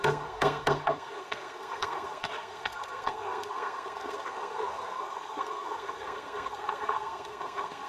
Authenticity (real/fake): fake